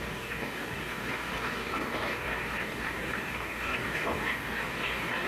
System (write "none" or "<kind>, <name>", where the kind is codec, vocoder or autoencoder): codec, DAC